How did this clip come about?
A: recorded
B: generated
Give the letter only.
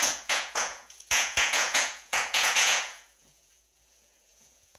B